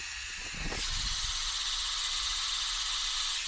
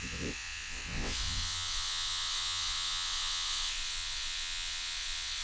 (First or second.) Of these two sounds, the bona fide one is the first